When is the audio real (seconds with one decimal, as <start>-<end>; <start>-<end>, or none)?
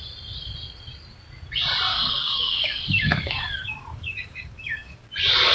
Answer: 0.0-1.9; 5.1-5.5